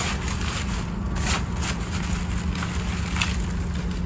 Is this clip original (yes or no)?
yes